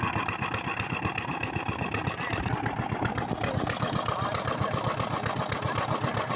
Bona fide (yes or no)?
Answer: yes